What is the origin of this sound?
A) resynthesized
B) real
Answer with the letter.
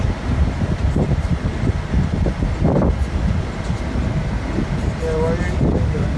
B